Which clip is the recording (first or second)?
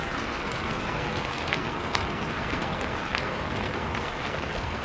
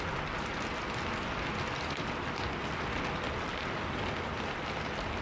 second